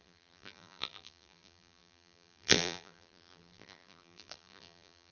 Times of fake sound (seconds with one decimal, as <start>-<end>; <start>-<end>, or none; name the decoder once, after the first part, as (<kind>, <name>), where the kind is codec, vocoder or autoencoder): 0.0-5.1 (vocoder, BigVGAN v2)